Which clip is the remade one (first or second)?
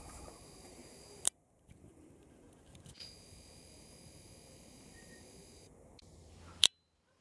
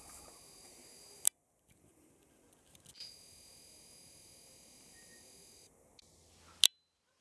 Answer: first